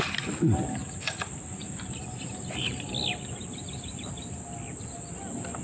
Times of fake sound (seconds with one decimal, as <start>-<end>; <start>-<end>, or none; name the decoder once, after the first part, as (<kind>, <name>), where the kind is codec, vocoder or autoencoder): 0.8-2.9 (vocoder, BigVGAN v2); 3.4-4.4